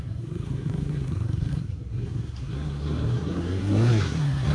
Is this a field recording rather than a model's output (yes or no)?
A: no